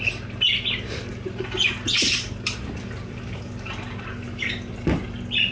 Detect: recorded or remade recorded